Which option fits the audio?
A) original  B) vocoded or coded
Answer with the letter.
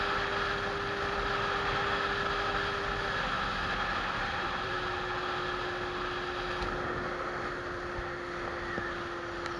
A